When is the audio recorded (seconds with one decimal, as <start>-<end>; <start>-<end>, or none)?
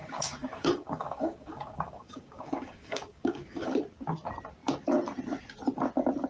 3.7-6.3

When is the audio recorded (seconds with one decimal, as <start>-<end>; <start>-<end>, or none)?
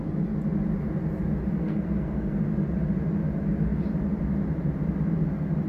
0.0-1.6; 2.4-5.7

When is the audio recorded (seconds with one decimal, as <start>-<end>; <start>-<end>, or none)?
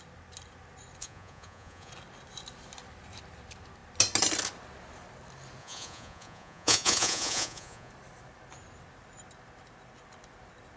0.0-1.0; 1.9-5.6; 7.9-10.8